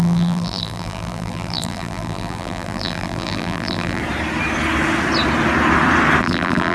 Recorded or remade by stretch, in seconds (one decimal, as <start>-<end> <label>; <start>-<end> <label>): 0.0-4.0 remade; 4.0-6.2 recorded; 6.2-6.7 remade